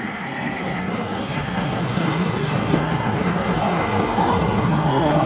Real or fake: fake